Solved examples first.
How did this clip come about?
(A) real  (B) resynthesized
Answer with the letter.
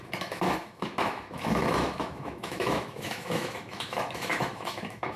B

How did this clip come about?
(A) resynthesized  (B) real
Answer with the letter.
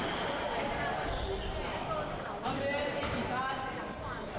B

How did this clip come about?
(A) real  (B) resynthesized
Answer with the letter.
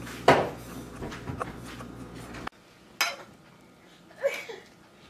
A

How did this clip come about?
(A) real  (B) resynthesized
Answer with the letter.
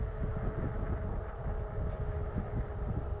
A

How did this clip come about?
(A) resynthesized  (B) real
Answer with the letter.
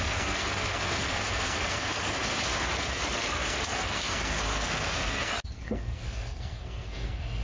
A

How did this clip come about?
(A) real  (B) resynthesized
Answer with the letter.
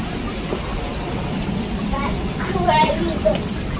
B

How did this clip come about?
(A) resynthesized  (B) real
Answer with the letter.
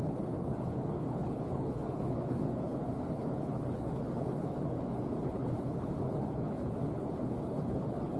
A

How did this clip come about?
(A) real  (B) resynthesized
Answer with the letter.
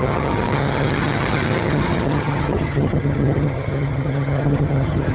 B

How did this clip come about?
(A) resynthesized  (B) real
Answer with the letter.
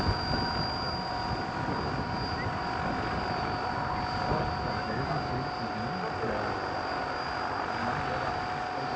B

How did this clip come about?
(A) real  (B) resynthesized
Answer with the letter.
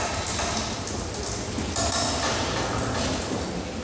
A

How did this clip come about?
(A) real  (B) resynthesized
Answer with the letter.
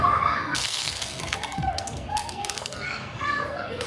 B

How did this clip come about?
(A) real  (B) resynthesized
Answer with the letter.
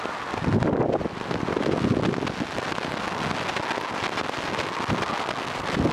A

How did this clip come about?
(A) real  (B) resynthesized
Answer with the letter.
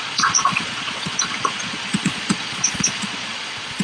B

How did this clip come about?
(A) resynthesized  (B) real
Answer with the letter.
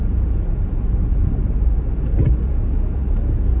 B